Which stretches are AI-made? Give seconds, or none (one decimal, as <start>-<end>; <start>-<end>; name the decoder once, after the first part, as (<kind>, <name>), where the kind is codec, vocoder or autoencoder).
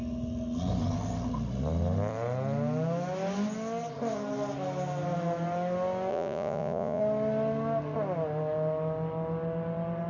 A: 6.1-7.0 (vocoder, Vocos)